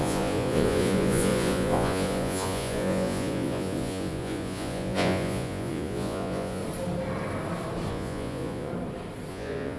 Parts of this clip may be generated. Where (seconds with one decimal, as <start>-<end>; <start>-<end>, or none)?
0.0-6.6; 7.9-8.7; 9.3-9.8